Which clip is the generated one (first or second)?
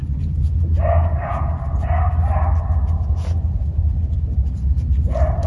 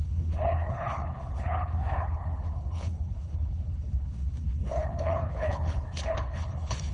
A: second